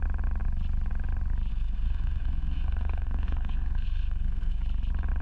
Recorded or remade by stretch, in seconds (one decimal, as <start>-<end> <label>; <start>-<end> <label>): 0.0-1.5 recorded; 1.5-4.6 remade; 4.6-5.2 recorded